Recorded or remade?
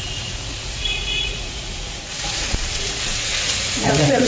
remade